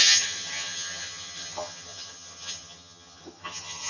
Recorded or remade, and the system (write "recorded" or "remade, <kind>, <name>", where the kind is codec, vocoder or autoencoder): remade, vocoder, HiFi-GAN